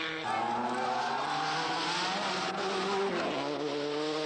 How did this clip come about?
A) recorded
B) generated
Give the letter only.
A